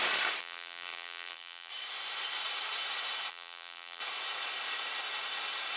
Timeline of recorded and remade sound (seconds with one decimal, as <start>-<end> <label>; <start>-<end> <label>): 0.0-0.4 recorded; 0.4-1.7 remade; 1.7-3.3 recorded; 3.3-4.0 remade; 4.0-5.8 recorded